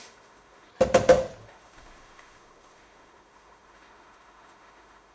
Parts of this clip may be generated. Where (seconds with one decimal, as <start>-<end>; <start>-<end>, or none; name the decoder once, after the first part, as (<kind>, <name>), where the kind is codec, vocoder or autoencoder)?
0.0-0.7 (autoencoder, DAC-VAE); 1.4-5.1